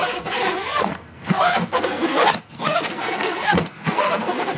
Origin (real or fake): fake